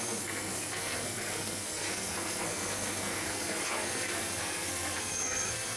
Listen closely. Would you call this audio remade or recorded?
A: remade